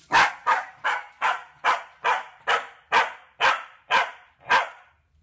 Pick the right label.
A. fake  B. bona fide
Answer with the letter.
B